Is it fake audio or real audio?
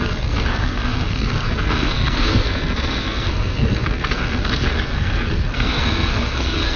fake